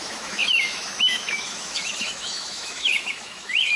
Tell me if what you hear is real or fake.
fake